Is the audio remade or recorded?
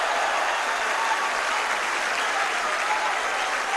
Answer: recorded